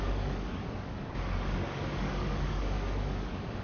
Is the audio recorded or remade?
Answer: remade